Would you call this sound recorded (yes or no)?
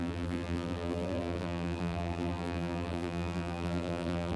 no